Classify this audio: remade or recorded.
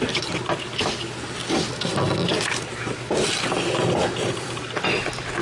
recorded